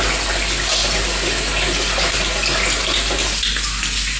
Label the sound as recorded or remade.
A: recorded